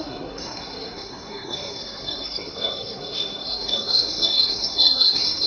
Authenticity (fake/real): fake